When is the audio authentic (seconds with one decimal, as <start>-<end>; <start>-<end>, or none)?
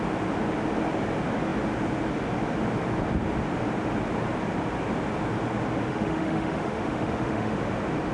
0.0-5.9; 7.6-8.1